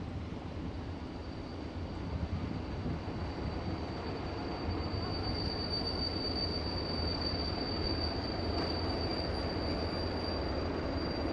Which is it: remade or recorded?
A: recorded